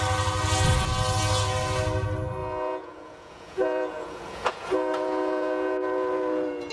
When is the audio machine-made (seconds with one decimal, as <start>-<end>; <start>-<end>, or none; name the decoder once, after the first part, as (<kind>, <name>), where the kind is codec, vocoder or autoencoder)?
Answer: 2.4-6.7 (vocoder, Vocos)